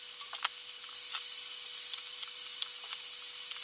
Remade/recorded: recorded